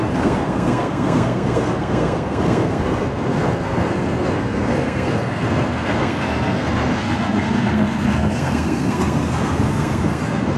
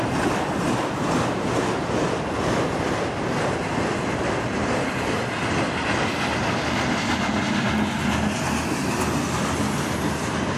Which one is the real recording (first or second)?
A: second